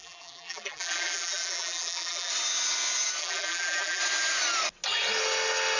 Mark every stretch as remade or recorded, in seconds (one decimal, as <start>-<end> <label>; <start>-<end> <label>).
0.0-2.3 remade; 2.3-3.2 recorded; 3.2-4.0 remade; 4.0-5.8 recorded